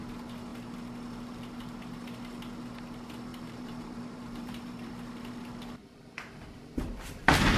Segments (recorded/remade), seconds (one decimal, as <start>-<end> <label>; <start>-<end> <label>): 0.0-3.3 recorded; 3.3-4.9 remade; 4.9-5.8 recorded; 5.8-6.4 remade; 6.4-7.6 recorded